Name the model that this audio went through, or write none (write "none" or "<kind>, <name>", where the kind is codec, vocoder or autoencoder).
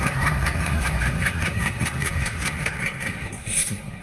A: codec, SNAC